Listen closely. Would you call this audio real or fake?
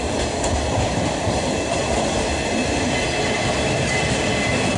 real